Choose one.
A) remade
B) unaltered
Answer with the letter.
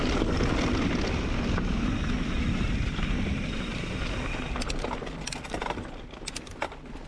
B